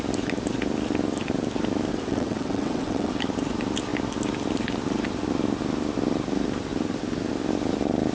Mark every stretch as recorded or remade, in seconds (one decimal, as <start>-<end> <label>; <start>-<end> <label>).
0.0-1.9 recorded; 1.9-3.1 remade; 3.1-8.1 recorded